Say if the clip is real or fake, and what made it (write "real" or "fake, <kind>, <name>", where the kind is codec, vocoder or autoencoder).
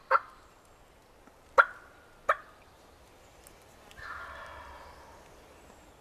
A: real